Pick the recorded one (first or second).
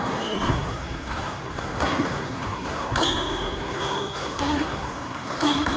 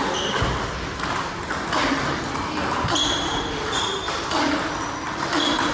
second